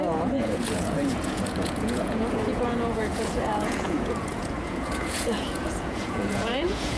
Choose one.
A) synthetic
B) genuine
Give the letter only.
A